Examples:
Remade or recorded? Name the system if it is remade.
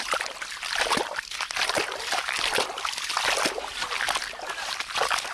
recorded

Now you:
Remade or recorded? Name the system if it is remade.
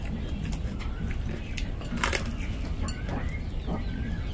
recorded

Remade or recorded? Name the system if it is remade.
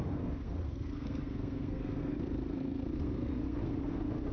remade, codec, SNAC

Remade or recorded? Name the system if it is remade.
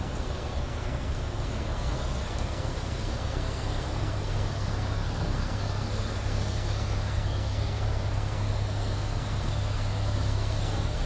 remade, codec, SNAC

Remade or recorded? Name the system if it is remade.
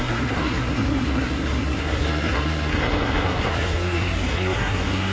remade, codec, SNAC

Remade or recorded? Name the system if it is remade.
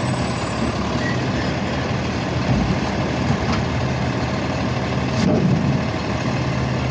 recorded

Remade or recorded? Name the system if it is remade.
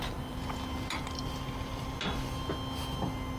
recorded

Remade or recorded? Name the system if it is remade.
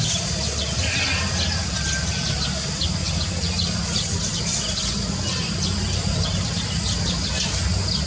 recorded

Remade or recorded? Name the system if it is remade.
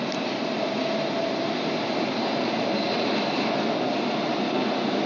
recorded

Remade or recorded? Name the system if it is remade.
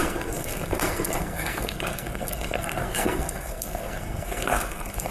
remade, codec, SNAC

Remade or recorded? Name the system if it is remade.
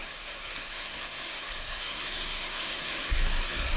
remade, codec, SNAC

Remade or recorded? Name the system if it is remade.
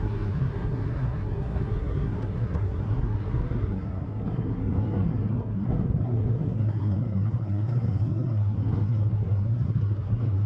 remade, codec, SNAC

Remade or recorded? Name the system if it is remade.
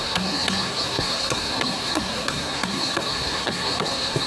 remade, codec, SNAC